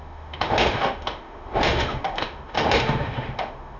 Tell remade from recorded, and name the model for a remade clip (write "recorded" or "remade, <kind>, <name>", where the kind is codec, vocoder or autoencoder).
remade, autoencoder, DAC-VAE